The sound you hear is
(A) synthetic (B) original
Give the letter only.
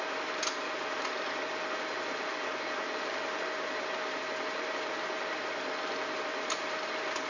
B